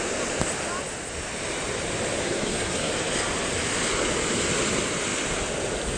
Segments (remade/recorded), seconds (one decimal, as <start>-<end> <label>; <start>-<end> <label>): 0.0-2.2 recorded; 2.2-2.9 remade; 2.9-6.0 recorded